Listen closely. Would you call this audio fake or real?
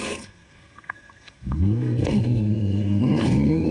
fake